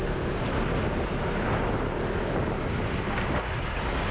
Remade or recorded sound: recorded